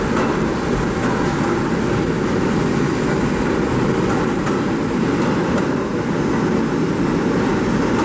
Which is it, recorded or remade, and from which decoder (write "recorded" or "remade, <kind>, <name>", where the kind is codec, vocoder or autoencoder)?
recorded